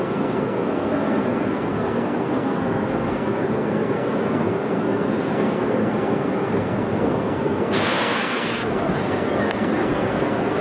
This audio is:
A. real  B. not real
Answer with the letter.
B